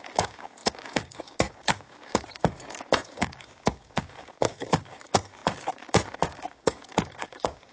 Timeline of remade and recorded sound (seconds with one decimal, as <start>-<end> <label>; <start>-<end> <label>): 0.0-7.7 remade